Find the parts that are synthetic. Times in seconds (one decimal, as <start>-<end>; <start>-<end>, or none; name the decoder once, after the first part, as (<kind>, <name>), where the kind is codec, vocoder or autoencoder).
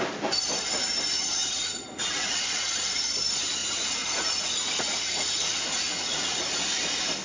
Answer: 1.4-3.0 (vocoder, Vocos); 3.6-6.5